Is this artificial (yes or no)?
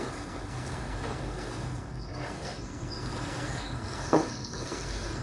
yes